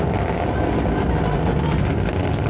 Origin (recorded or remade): recorded